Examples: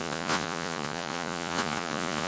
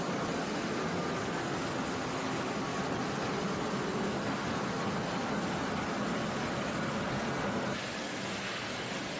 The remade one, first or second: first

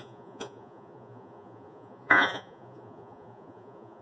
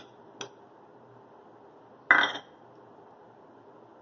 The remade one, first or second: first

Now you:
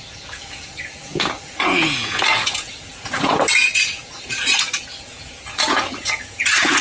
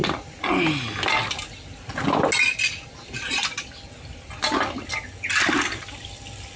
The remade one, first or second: first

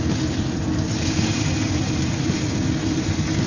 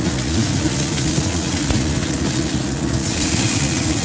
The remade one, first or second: second